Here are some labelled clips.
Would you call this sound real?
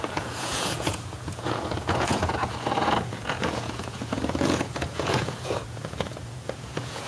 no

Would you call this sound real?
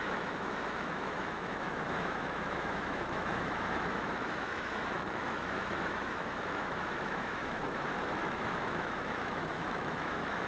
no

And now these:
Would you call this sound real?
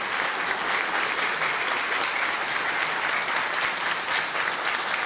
yes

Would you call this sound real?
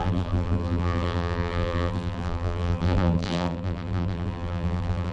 no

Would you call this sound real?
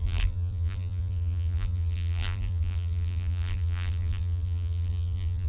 no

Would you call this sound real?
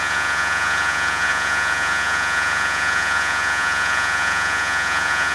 no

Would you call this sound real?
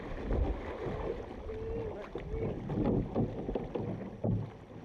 yes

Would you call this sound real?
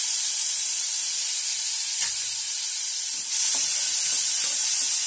yes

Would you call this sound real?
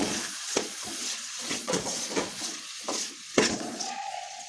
no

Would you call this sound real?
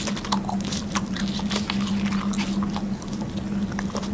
yes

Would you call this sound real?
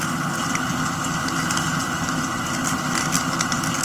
yes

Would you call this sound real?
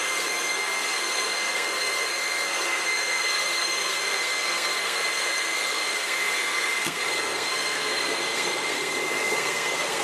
no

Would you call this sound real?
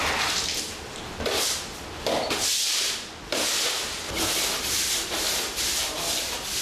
yes